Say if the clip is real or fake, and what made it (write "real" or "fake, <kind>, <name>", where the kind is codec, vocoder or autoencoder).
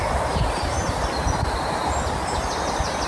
real